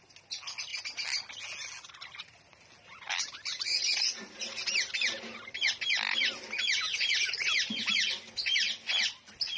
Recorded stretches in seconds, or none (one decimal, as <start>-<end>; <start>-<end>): 0.0-9.6